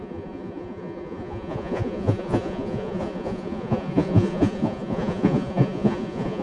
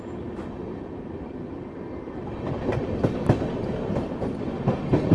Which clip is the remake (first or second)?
first